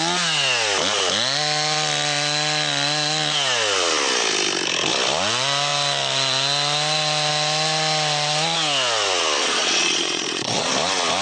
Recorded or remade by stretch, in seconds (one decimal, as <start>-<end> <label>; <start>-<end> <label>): 0.0-9.4 recorded; 9.4-10.7 remade; 10.7-11.2 recorded